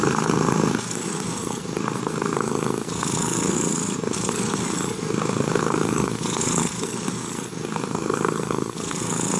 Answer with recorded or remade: remade